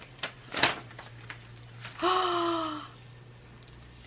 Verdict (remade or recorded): recorded